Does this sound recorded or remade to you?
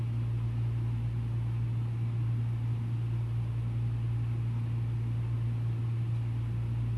recorded